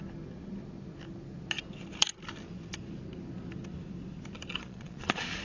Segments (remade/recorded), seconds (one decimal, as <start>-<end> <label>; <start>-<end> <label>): 0.0-4.6 recorded; 4.6-5.4 remade